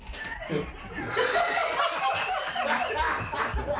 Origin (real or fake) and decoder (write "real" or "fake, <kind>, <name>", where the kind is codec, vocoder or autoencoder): real